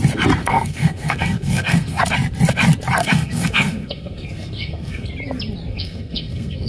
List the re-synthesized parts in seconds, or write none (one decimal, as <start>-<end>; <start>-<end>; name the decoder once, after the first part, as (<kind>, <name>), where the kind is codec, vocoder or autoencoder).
0.4-2.0 (codec, SNAC); 3.0-5.1; 5.7-6.7

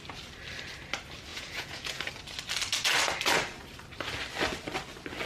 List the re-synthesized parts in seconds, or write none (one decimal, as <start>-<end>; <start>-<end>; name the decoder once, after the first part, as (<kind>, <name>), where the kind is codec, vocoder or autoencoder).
1.3-2.1 (vocoder, Vocos)

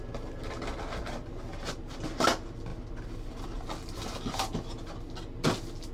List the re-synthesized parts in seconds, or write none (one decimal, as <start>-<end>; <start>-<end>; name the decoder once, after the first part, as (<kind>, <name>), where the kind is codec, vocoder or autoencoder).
none

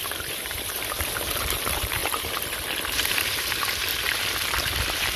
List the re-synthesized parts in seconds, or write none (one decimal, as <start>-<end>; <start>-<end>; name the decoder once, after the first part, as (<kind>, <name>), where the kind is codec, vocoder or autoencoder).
0.0-2.0 (vocoder, BigVGAN v2); 2.9-3.9; 4.6-5.2

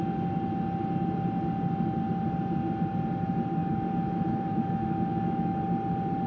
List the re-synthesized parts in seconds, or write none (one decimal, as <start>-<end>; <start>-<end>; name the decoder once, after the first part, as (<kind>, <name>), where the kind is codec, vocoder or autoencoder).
3.6-5.6 (autoencoder, DAC-VAE)

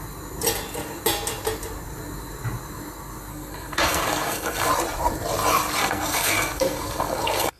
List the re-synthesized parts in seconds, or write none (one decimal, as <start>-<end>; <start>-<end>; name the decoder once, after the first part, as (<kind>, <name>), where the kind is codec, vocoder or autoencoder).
3.3-4.7 (codec, SNAC); 5.8-7.6